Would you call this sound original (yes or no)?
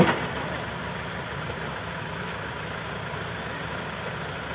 yes